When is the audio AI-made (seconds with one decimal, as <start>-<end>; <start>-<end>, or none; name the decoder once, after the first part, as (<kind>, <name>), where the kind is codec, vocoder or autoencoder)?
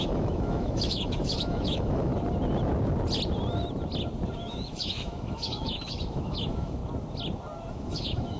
0.0-2.1 (autoencoder, DAC-VAE); 4.4-6.8; 7.7-8.4